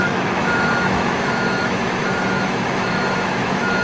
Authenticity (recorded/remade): remade